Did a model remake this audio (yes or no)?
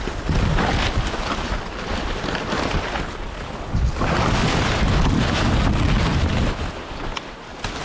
no